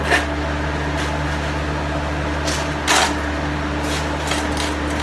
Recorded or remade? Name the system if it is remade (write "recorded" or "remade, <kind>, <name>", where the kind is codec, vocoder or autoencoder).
recorded